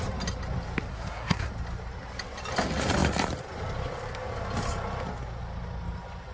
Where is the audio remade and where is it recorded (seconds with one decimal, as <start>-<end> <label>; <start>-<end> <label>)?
0.0-0.9 recorded; 0.9-1.5 remade; 1.5-6.3 recorded